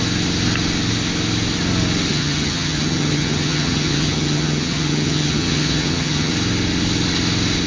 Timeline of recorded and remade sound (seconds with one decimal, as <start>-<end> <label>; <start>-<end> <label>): 0.0-2.1 recorded; 2.1-6.3 remade; 6.3-7.7 recorded